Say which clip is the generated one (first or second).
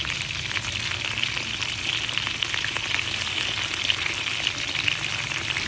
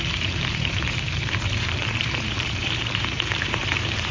second